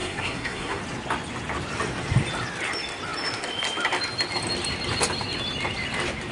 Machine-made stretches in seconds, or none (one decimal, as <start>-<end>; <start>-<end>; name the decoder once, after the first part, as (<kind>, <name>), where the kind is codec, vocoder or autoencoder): 0.0-0.8 (codec, SNAC)